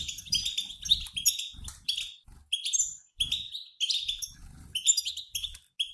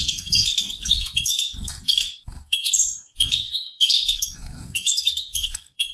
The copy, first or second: second